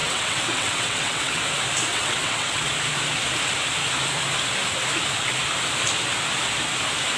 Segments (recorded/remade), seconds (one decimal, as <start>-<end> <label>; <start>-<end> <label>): 0.0-1.4 remade; 1.4-1.9 recorded; 1.9-2.7 remade; 2.7-7.2 recorded